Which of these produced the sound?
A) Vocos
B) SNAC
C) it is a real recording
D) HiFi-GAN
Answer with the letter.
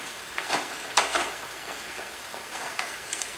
B